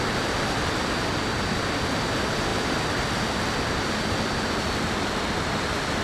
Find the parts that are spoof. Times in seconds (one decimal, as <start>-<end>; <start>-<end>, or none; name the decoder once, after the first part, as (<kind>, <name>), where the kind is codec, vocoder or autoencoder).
none